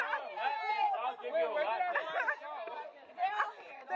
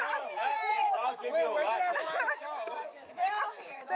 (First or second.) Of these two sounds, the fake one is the second